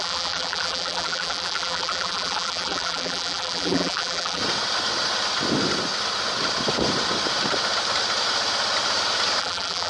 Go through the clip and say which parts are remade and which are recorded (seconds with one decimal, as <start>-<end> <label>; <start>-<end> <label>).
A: 0.0-4.4 remade; 4.4-9.4 recorded; 9.4-9.9 remade